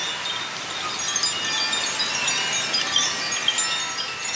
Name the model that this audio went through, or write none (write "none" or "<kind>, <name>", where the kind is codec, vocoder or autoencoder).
none